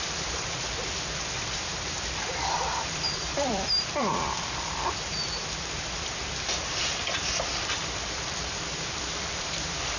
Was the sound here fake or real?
fake